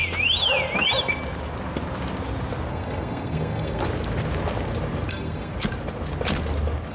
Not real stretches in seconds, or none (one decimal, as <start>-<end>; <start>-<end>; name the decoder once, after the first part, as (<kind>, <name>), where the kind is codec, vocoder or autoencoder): 2.7-3.8 (codec, SNAC); 5.1-5.5